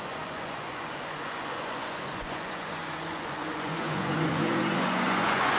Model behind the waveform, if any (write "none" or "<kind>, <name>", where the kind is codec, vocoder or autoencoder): vocoder, Vocos